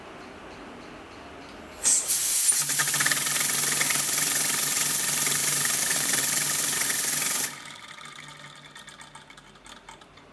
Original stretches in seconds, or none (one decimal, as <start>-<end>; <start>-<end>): 0.0-5.4; 6.2-10.3